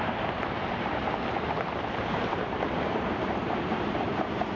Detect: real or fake fake